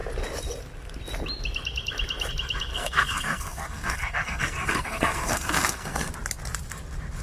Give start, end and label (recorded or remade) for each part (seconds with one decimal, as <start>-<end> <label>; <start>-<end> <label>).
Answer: 0.0-2.7 recorded; 2.7-6.1 remade; 6.1-7.2 recorded